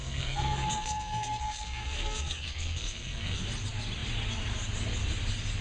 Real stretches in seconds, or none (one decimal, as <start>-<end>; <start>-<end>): 3.4-5.6